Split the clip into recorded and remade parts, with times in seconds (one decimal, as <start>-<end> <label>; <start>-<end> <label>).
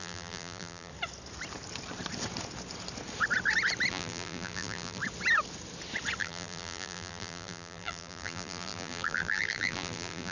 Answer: 0.0-0.9 remade; 0.9-3.9 recorded; 3.9-5.0 remade; 5.0-6.2 recorded; 6.2-10.3 remade